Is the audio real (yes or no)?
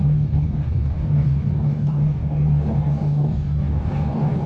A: no